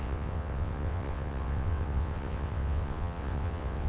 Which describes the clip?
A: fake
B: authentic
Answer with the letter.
A